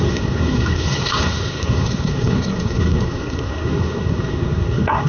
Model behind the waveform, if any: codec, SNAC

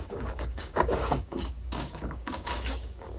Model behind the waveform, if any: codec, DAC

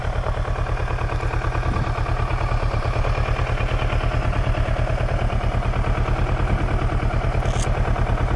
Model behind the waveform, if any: none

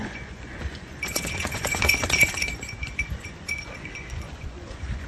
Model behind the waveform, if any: vocoder, Vocos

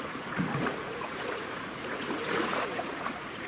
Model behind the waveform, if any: vocoder, Vocos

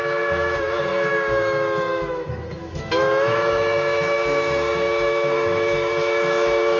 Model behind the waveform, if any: autoencoder, DAC-VAE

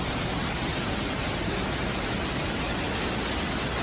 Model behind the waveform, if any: none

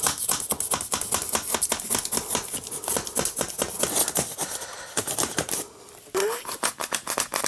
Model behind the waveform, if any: none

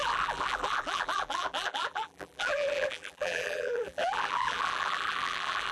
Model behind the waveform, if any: vocoder, BigVGAN v2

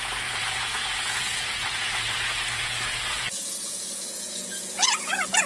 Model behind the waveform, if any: vocoder, Vocos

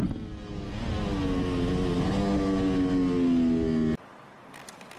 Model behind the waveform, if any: none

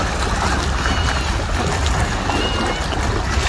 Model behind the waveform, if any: none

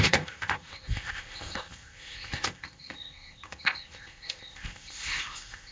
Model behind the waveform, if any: codec, ZipCodec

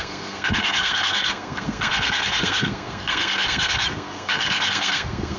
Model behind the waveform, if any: codec, SNAC